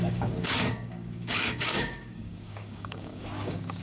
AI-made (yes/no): yes